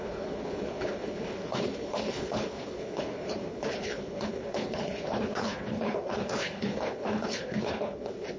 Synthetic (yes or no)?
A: yes